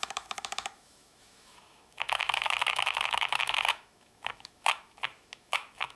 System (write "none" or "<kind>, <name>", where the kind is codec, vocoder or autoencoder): autoencoder, DAC-VAE